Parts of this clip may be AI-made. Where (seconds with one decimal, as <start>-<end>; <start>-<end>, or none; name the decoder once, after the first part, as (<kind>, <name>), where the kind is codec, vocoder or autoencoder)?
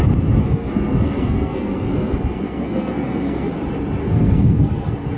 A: 0.4-3.5 (codec, SNAC); 4.0-5.2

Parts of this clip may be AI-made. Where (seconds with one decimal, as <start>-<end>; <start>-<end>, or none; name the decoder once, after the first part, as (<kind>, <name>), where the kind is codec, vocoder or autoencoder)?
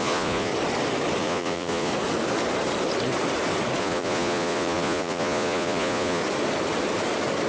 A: 0.0-0.5 (vocoder, Vocos); 1.2-1.9; 3.8-6.2